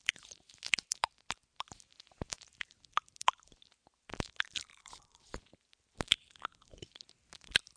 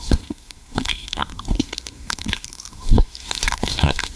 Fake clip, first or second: second